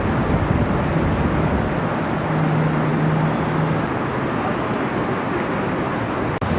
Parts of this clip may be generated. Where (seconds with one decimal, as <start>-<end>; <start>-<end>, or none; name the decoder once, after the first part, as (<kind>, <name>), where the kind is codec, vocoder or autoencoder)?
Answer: none